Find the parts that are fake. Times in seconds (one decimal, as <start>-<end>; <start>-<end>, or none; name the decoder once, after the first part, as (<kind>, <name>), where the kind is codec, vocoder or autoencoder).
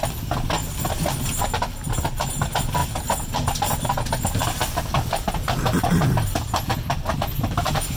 0.0-0.6 (vocoder, BigVGAN v2); 1.4-2.8; 4.4-8.0